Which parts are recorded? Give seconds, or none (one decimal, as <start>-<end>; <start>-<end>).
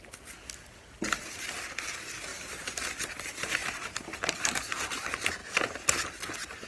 0.0-2.3; 3.0-3.6; 4.6-6.7